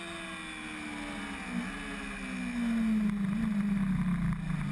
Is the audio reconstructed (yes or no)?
no